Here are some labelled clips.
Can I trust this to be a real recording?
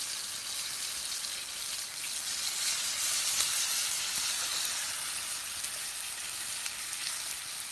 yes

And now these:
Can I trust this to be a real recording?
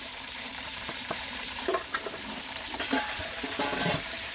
no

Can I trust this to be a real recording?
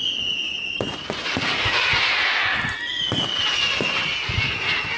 yes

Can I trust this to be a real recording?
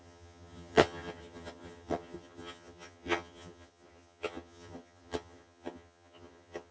no